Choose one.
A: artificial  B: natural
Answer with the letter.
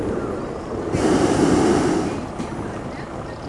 B